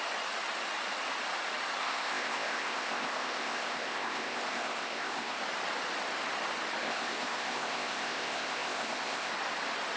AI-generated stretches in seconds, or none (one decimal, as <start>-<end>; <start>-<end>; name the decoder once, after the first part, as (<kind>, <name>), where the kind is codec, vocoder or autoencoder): 1.8-5.4 (codec, ZipCodec); 6.8-9.3